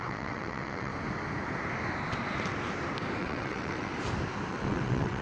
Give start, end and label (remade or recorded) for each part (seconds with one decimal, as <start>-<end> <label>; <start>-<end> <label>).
0.0-0.9 remade; 0.9-3.2 recorded; 3.2-3.9 remade; 3.9-4.5 recorded; 4.5-5.2 remade